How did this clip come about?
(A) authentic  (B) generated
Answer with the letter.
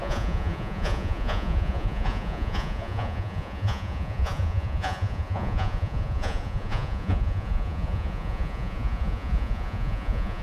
B